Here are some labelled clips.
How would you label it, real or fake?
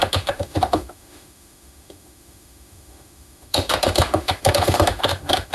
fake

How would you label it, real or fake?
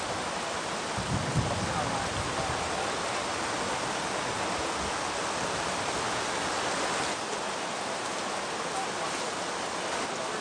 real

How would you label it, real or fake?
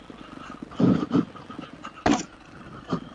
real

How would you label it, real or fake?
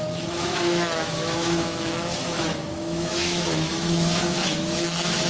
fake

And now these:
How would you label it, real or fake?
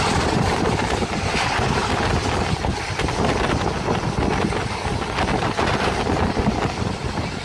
real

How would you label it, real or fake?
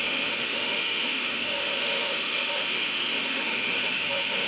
fake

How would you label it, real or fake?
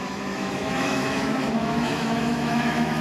fake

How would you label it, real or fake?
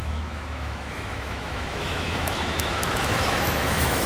fake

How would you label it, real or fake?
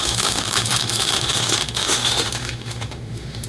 fake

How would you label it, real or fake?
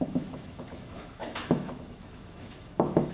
fake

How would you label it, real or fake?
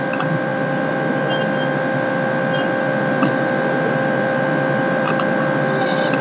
real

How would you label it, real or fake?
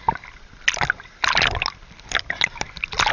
real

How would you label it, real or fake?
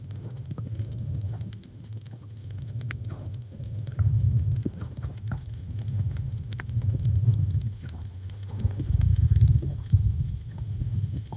fake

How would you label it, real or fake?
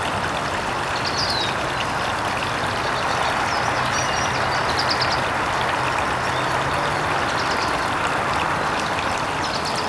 real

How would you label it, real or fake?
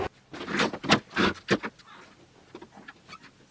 real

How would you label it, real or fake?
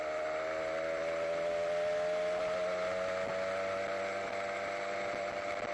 real